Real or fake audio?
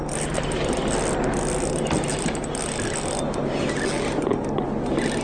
real